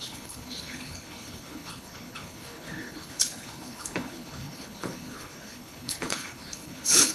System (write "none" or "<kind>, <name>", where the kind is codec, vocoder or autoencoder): codec, HILCodec